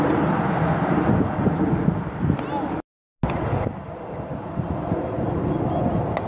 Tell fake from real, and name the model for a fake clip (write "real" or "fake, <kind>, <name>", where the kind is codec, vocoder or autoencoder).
real